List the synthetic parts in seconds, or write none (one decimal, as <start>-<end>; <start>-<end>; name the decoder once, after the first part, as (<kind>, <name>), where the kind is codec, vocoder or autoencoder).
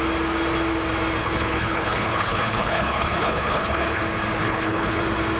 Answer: 1.2-4.0 (codec, HILCodec); 4.4-5.0